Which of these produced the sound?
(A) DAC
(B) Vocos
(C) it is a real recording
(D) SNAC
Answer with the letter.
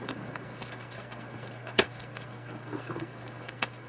D